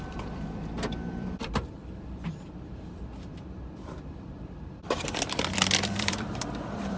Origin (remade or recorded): remade